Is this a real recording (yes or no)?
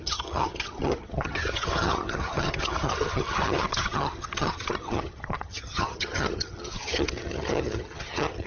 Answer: no